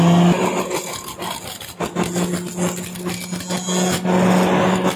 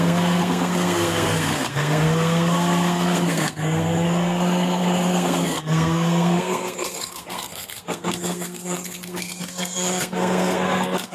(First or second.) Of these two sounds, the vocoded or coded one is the second